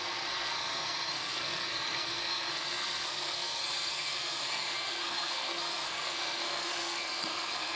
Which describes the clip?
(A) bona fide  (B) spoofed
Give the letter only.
B